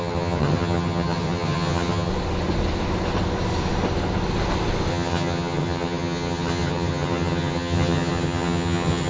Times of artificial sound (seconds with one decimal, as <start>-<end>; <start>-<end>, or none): 0.0-2.1; 4.9-9.1